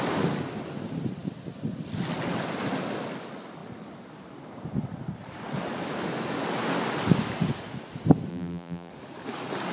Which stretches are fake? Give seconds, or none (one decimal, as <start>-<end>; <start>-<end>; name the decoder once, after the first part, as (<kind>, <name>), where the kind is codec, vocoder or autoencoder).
8.3-8.9 (vocoder, BigVGAN v2)